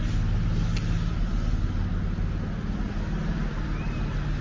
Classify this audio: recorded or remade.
recorded